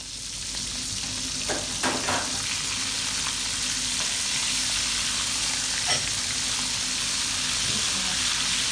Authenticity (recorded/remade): recorded